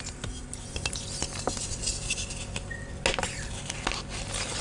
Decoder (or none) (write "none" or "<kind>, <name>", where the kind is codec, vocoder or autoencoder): none